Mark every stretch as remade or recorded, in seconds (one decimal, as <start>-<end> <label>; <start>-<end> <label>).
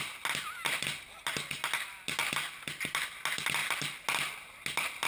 0.0-5.1 recorded